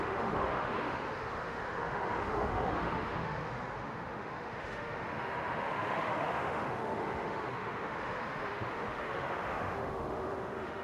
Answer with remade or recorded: remade